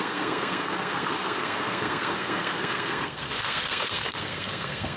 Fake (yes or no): yes